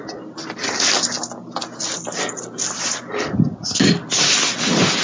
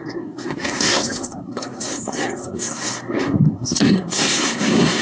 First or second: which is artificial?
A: second